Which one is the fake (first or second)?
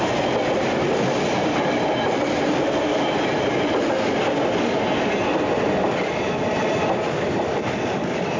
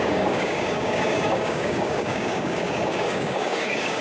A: second